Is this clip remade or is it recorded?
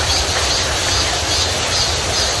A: recorded